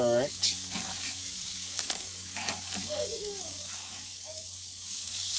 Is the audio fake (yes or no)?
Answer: yes